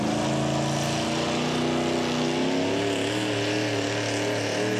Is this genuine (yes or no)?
yes